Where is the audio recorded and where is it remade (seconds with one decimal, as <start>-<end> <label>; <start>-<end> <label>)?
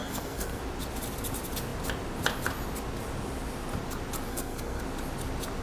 0.0-0.6 remade; 0.6-4.3 recorded; 4.3-4.8 remade; 4.8-5.6 recorded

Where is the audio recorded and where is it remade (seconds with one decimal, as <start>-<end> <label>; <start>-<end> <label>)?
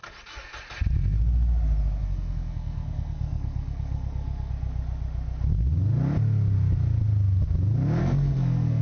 0.0-2.0 recorded; 2.0-4.5 remade; 4.5-8.0 recorded; 8.0-8.8 remade